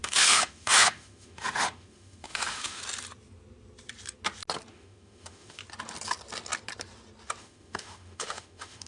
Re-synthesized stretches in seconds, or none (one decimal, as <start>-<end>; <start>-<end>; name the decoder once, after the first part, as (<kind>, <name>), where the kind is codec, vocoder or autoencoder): 0.0-2.8 (autoencoder, DAC-VAE); 4.7-5.6; 7.4-8.9